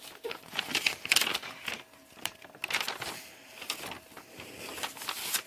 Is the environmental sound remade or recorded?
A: recorded